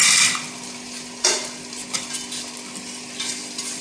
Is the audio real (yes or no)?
no